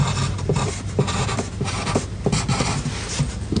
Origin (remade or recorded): recorded